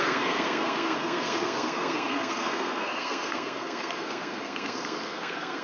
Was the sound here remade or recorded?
remade